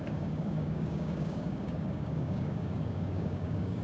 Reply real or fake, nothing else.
fake